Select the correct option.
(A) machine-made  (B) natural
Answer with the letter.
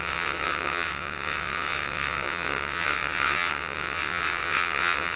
A